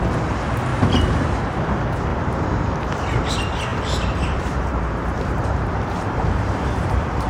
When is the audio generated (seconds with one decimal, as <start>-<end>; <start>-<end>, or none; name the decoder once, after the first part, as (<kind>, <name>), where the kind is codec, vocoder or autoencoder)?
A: 0.7-1.4 (vocoder, BigVGAN v2); 2.1-3.3; 3.7-7.3